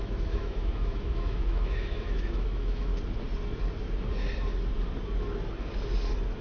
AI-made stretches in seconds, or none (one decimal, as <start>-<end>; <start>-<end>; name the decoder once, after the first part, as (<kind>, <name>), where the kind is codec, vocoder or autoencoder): 0.0-2.9 (autoencoder, DAC-VAE)